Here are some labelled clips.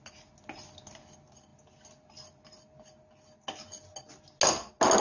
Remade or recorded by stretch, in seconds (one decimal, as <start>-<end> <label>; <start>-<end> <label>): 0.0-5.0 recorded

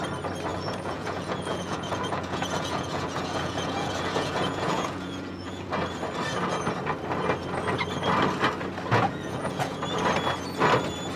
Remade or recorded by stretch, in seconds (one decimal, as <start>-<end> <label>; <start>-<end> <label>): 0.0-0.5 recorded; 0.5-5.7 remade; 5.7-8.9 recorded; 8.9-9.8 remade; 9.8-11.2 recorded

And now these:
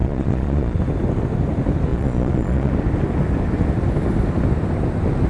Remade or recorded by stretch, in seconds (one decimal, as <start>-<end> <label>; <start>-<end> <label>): 0.0-0.8 remade; 0.8-1.9 recorded; 1.9-2.7 remade; 2.7-5.3 recorded

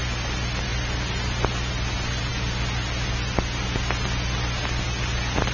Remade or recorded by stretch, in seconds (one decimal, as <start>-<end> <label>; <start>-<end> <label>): 0.0-5.5 recorded

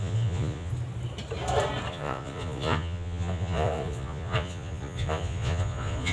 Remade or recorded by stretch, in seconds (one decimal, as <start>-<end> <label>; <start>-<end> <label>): 0.0-0.7 remade; 0.7-1.9 recorded; 1.9-6.1 remade

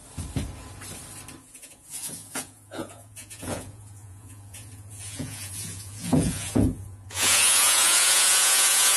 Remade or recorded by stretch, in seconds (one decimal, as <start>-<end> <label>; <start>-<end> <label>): 0.0-1.4 recorded; 1.4-9.0 remade

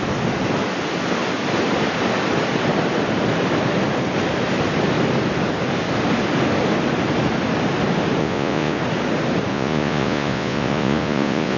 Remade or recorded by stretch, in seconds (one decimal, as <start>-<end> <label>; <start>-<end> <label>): 0.0-8.2 recorded; 8.2-8.8 remade; 8.8-9.5 recorded; 9.5-11.6 remade